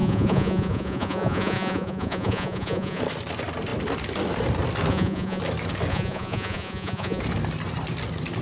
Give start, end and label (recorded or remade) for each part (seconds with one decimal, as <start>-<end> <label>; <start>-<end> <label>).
0.0-3.0 remade; 3.0-4.9 recorded; 4.9-5.4 remade; 5.4-5.9 recorded; 5.9-7.2 remade; 7.2-8.4 recorded